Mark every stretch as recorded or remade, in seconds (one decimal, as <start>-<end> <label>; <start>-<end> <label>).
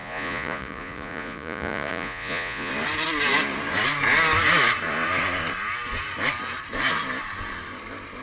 0.0-2.7 remade; 2.7-8.2 recorded